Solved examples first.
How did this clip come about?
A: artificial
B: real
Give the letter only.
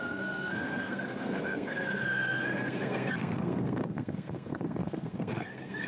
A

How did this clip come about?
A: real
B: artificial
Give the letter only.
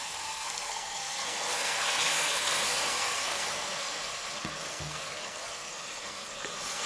B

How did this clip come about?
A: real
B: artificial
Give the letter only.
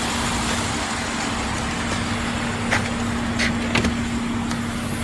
A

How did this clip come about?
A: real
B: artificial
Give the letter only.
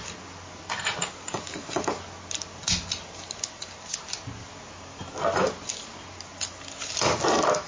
A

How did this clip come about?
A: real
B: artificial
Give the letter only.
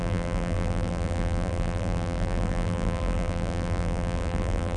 B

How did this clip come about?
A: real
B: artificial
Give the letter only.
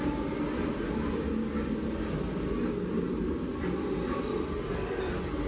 A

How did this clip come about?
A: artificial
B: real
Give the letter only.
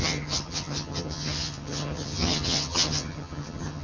A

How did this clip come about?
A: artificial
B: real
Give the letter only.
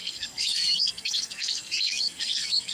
A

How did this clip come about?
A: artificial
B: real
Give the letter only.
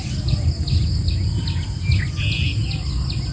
B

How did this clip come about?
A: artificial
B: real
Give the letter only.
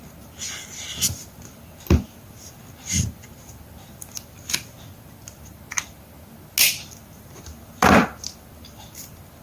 B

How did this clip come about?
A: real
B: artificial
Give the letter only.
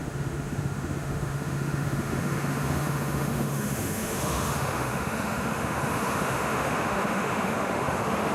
B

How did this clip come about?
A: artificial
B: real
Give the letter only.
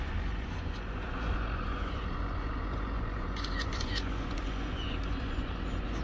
A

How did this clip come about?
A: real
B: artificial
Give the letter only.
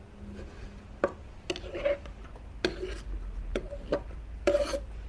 A